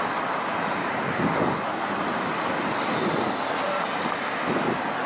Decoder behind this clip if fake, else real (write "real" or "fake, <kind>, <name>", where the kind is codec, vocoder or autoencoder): real